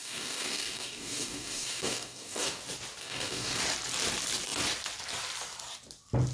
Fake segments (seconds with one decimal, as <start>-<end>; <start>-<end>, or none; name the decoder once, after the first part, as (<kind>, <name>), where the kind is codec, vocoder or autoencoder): 0.0-2.6 (codec, DAC); 3.0-3.6